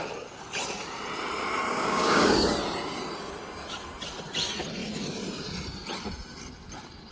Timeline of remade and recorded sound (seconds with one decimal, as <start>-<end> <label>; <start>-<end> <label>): 0.0-1.7 recorded; 1.7-2.5 remade; 2.5-7.1 recorded